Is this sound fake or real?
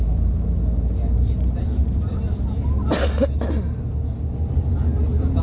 real